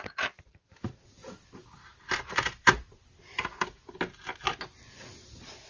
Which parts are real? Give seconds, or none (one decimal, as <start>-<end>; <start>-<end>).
0.0-1.2; 3.9-5.7